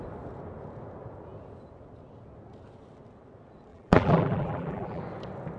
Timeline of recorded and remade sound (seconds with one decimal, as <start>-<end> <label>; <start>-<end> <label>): 0.0-3.7 recorded; 3.7-5.0 remade; 5.0-5.6 recorded